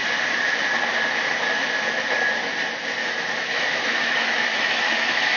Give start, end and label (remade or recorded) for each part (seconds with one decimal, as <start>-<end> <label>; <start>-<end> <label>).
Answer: 0.0-3.0 recorded; 3.0-5.4 remade